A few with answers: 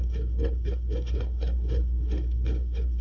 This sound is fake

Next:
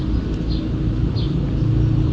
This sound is real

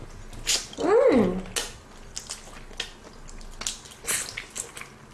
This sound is real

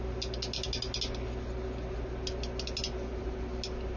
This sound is real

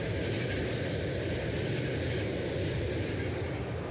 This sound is real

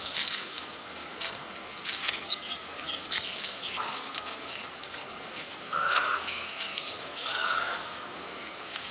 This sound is fake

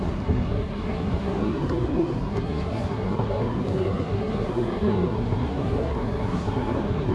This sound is fake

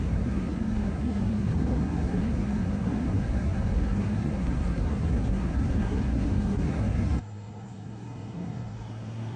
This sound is fake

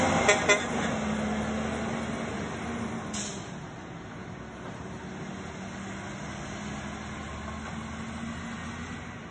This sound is real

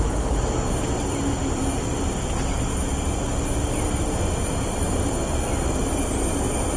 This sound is real